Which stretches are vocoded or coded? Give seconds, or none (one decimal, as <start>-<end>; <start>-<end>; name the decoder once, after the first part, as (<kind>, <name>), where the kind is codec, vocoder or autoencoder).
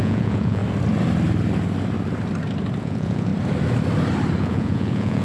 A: 0.0-0.6 (vocoder, Vocos); 2.8-3.3; 4.4-5.2